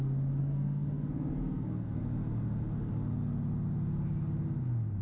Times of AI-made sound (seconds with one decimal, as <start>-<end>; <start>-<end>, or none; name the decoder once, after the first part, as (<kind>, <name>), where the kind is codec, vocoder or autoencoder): 0.4-2.0 (codec, SNAC)